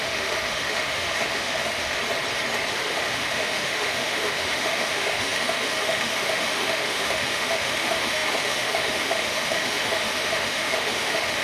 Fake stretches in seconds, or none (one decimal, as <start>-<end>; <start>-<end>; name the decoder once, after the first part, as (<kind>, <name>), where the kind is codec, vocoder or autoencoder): 0.0-2.0 (autoencoder, DAC-VAE); 2.7-11.4